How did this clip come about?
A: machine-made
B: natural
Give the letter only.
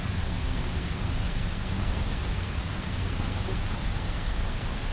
A